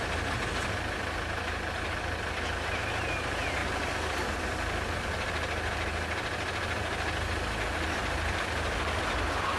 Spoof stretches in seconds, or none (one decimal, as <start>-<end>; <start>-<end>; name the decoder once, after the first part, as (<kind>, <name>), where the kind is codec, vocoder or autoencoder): none

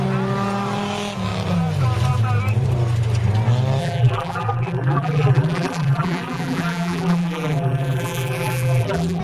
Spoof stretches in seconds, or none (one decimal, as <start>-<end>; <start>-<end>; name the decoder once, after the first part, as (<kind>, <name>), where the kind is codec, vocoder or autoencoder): 3.8-9.2 (vocoder, BigVGAN v2)

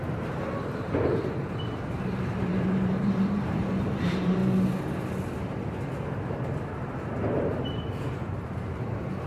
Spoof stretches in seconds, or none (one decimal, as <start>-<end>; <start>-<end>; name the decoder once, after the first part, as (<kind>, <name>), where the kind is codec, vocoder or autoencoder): 0.0-4.4 (vocoder, BigVGAN v2); 5.4-5.9; 7.5-9.3